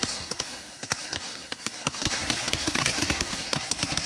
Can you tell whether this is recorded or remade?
remade